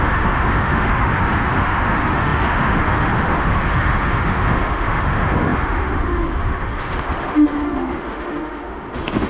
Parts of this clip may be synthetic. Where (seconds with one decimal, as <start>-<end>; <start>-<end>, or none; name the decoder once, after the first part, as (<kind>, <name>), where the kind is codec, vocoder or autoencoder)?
0.0-9.3 (autoencoder, DAC-VAE)